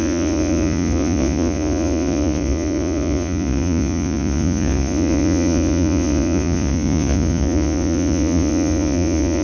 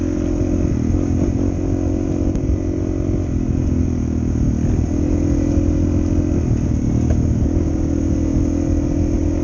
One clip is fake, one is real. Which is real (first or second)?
second